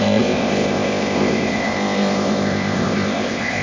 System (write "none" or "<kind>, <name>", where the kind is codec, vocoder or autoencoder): codec, ZipCodec